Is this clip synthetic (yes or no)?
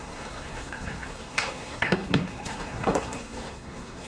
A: yes